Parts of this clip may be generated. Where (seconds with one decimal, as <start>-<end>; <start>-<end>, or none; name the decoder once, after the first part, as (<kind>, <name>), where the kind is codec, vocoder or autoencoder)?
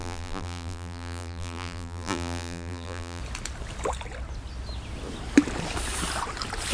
0.0-3.2 (vocoder, BigVGAN v2)